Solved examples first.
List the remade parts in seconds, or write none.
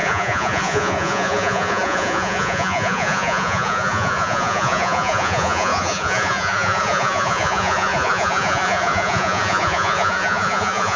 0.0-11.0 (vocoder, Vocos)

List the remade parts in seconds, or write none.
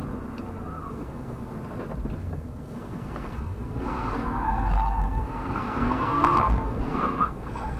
0.9-1.5 (codec, SNAC); 2.2-7.8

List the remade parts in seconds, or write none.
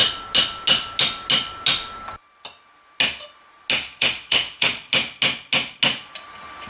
4.0-4.9 (vocoder, Vocos)